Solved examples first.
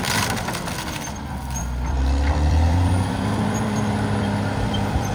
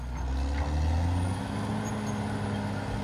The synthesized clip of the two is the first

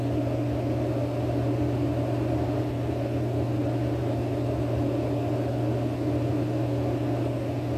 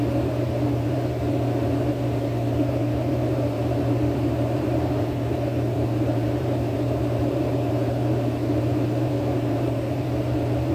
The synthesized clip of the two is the second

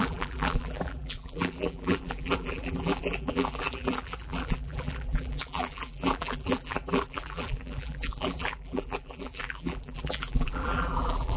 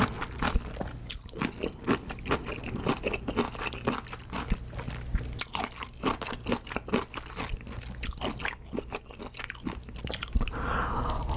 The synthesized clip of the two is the first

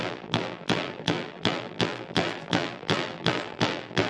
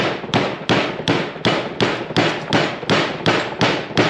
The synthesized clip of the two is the first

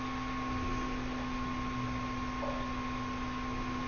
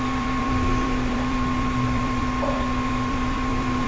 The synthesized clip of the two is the second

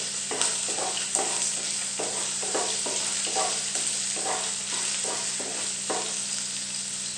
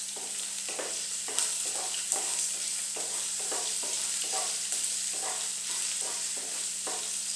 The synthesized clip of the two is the second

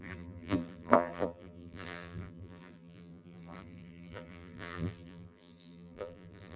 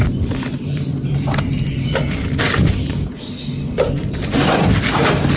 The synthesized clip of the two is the first